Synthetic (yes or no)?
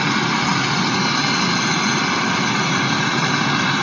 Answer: no